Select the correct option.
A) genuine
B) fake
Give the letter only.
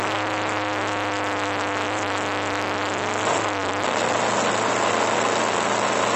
A